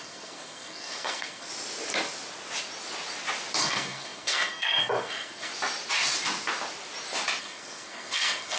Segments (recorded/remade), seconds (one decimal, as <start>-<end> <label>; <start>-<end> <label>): 0.0-1.5 remade; 1.5-3.6 recorded; 3.6-5.5 remade; 5.5-7.4 recorded; 7.4-8.6 remade